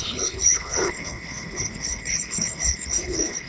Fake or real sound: fake